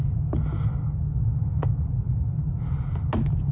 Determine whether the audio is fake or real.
real